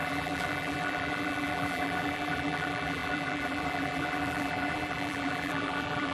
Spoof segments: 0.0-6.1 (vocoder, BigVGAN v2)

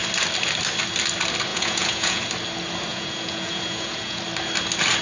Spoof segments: 1.5-2.2 (vocoder, Vocos); 2.9-4.2

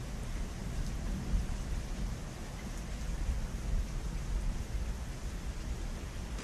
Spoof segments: none

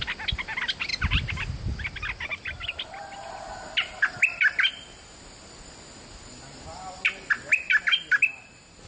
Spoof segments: none

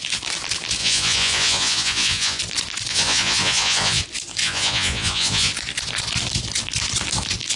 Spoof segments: 0.8-2.4 (vocoder, Vocos); 2.9-4.0; 4.4-5.5

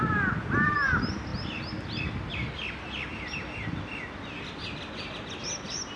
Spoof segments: 3.1-5.1 (vocoder, BigVGAN v2)

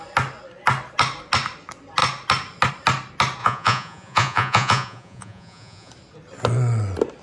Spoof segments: 3.4-5.9 (vocoder, Vocos)

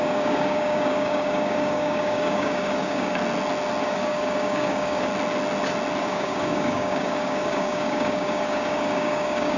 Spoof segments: 0.0-3.2 (codec, DAC); 3.8-5.1; 6.0-9.6